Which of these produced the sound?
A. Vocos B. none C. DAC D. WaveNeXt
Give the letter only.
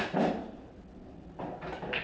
B